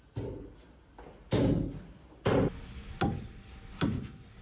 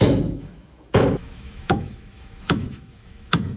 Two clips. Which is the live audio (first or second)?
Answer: first